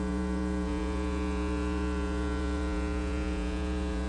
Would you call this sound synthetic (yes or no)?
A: yes